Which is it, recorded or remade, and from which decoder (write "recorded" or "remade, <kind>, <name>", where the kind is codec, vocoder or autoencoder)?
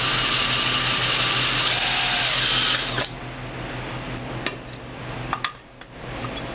recorded